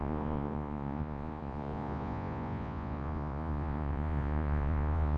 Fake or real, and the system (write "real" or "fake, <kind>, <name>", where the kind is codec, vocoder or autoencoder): fake, vocoder, Vocos